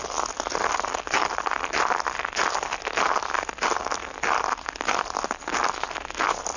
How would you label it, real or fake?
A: real